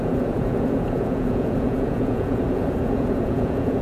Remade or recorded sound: remade